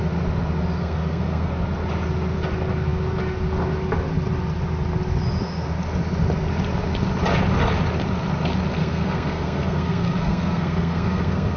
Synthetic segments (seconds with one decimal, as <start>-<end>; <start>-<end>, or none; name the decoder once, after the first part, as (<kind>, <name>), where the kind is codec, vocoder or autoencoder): 0.8-1.5 (codec, SNAC); 8.8-11.6